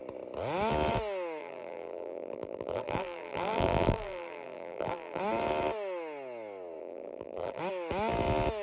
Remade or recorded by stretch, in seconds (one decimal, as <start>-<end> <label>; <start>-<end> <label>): 0.0-1.4 recorded; 1.4-5.2 remade; 5.2-6.8 recorded; 6.8-7.6 remade; 7.6-8.6 recorded